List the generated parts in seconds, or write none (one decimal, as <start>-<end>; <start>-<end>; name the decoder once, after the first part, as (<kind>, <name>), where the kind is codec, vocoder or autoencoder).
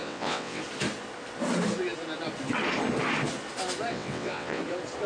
0.0-0.6 (vocoder, WaveNeXt); 3.9-4.6